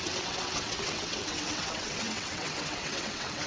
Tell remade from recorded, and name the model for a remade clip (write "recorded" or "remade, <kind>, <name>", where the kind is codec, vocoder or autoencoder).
remade, vocoder, WaveNeXt